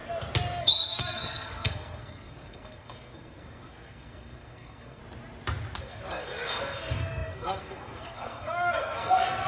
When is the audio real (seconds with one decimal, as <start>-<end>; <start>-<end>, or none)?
0.0-0.6; 5.0-5.8